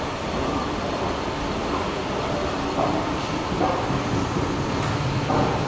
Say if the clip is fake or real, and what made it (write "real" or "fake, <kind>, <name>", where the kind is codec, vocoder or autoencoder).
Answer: real